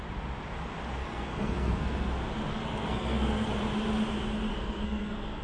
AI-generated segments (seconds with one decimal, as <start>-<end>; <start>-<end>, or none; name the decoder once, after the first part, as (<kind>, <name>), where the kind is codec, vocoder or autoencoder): 1.0-2.1 (codec, SNAC); 2.5-3.5; 4.5-5.4

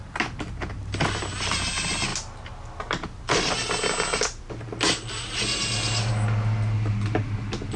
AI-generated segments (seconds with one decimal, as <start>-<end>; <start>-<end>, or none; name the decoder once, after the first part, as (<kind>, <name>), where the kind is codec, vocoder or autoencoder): none

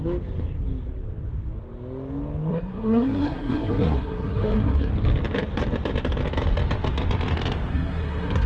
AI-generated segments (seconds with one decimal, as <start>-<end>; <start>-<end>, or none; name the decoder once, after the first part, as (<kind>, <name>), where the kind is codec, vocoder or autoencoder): 2.5-4.9 (codec, SNAC); 7.7-8.5

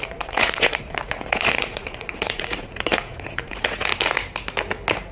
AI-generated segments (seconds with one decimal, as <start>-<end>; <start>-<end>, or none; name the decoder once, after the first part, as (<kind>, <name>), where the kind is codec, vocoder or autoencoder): 0.0-3.9 (vocoder, Vocos)

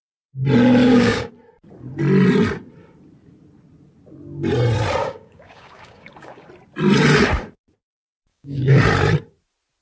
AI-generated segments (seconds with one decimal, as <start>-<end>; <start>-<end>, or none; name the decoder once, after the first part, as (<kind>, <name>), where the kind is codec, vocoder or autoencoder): 0.8-1.3 (codec, DAC); 5.0-6.5; 8.3-8.8

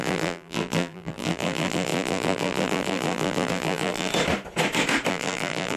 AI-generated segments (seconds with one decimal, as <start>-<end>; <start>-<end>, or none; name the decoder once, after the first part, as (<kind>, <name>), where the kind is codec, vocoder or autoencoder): 0.0-4.1 (vocoder, BigVGAN v2); 5.1-5.8

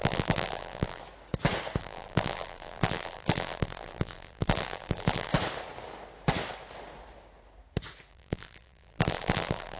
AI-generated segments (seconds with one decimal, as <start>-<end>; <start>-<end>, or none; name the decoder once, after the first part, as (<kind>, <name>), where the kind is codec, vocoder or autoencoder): 0.0-1.0 (vocoder, BigVGAN v2); 1.8-5.3; 8.1-9.8

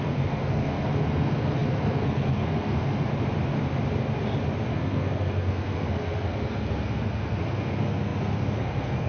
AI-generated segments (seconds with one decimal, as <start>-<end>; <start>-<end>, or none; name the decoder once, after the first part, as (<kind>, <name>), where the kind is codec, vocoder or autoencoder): 0.0-3.1 (codec, SNAC); 4.7-9.1